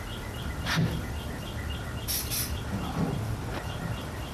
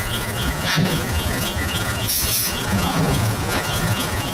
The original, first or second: first